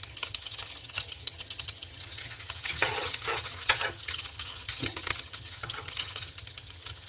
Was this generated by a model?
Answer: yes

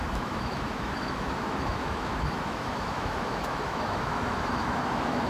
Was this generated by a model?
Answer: yes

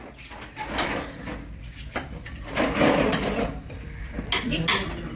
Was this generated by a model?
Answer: no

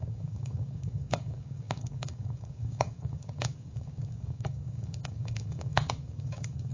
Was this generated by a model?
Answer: yes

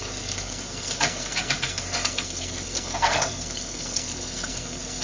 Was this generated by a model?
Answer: yes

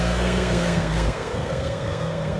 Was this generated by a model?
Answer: yes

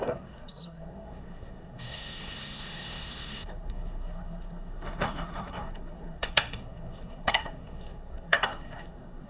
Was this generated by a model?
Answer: yes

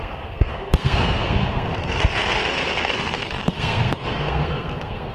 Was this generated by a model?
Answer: yes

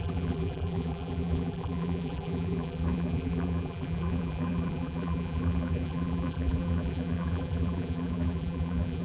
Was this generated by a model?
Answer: yes